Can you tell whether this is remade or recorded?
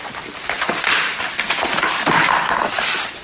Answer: recorded